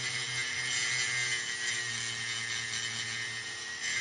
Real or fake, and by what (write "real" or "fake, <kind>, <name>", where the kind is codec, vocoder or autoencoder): real